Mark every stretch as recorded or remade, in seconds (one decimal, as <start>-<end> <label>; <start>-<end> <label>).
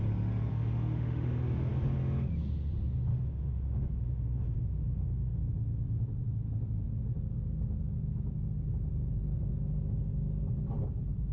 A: 0.0-0.5 recorded; 0.5-1.7 remade; 1.7-3.1 recorded; 3.1-5.4 remade; 5.4-11.3 recorded